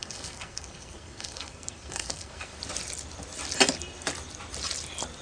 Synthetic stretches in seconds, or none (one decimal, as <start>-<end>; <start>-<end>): 0.0-2.6